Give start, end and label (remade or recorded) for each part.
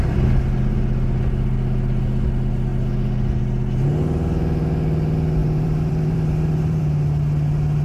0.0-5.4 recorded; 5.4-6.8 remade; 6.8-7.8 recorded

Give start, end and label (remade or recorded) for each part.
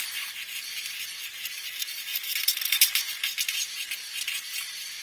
0.0-2.1 remade; 2.1-4.6 recorded; 4.6-5.0 remade